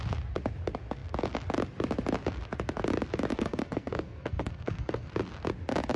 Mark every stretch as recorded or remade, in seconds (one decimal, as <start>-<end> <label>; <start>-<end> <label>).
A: 0.0-3.3 recorded; 3.3-5.1 remade; 5.1-6.0 recorded

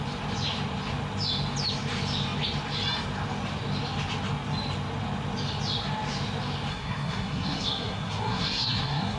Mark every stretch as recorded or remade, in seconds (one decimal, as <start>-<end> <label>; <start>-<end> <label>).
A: 0.0-6.7 recorded; 6.7-9.2 remade

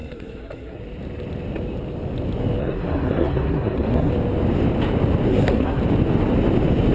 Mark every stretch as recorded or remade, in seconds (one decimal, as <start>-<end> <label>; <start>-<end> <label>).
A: 0.0-0.8 remade; 0.8-2.6 recorded; 2.6-4.1 remade; 4.1-5.3 recorded; 5.3-5.8 remade; 5.8-6.9 recorded

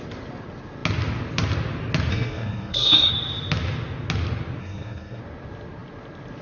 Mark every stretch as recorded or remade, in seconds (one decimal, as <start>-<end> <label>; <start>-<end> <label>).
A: 0.0-2.1 recorded; 2.1-3.1 remade; 3.1-4.6 recorded; 4.6-5.2 remade; 5.2-6.4 recorded

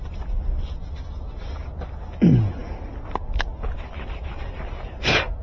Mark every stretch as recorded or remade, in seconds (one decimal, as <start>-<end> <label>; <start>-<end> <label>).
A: 0.0-5.4 recorded

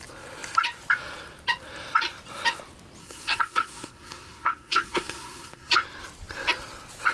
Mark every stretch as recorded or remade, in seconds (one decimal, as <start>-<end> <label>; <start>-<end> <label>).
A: 0.0-3.0 recorded; 3.0-5.7 remade; 5.7-7.1 recorded

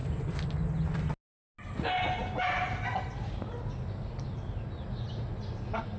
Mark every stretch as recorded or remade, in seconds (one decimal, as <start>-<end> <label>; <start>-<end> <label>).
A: 0.0-6.0 recorded